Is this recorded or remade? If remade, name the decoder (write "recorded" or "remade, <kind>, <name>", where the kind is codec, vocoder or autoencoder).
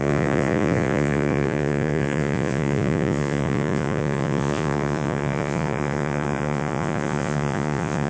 remade, vocoder, Vocos